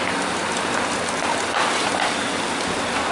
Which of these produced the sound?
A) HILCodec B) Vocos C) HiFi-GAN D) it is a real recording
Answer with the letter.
D